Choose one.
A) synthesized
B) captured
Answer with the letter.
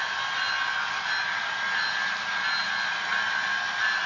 B